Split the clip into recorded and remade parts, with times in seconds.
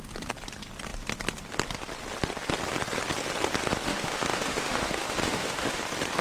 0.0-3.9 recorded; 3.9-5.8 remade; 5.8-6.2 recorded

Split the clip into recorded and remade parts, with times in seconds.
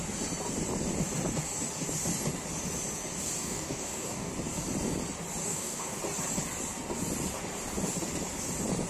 0.0-3.4 recorded; 3.4-4.3 remade; 4.3-5.4 recorded; 5.4-6.0 remade; 6.0-8.9 recorded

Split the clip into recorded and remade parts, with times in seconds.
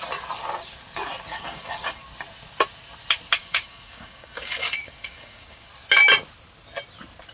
0.0-1.3 recorded; 1.3-2.0 remade; 2.0-3.4 recorded; 3.4-5.7 remade; 5.7-7.3 recorded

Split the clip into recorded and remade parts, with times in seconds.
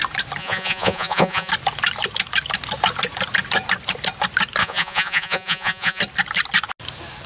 0.0-0.4 recorded; 0.4-1.5 remade; 1.5-4.6 recorded; 4.6-6.0 remade; 6.0-7.3 recorded